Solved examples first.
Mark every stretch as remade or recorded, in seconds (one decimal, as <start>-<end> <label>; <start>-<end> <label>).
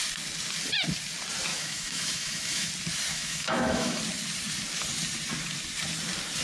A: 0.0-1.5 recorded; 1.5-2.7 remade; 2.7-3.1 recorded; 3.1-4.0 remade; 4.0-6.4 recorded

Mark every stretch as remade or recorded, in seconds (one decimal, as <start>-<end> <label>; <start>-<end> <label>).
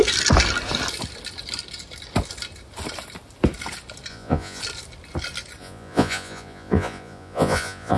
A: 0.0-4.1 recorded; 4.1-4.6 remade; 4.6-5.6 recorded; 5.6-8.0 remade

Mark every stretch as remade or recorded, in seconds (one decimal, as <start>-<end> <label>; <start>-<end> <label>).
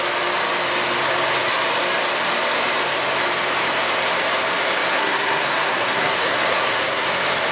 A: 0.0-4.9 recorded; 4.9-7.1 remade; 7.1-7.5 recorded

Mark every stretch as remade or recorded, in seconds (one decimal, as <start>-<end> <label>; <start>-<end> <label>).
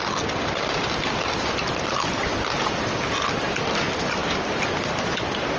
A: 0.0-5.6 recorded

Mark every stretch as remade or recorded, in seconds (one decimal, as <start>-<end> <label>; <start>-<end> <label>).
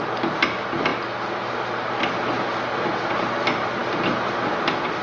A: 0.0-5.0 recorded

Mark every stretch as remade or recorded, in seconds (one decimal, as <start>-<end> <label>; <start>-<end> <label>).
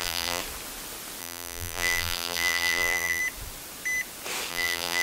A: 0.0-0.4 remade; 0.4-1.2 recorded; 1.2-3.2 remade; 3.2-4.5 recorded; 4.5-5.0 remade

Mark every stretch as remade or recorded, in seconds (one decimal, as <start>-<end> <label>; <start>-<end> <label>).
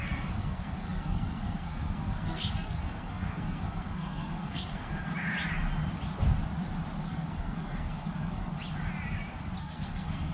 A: 0.0-5.1 remade; 5.1-7.0 recorded; 7.0-8.5 remade; 8.5-9.6 recorded; 9.6-10.3 remade